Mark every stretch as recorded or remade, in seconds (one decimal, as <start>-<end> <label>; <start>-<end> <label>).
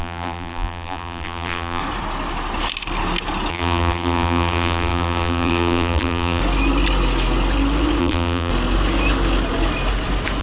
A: 0.0-1.8 remade; 1.8-3.5 recorded; 3.5-6.4 remade; 6.4-8.0 recorded; 8.0-8.5 remade; 8.5-10.4 recorded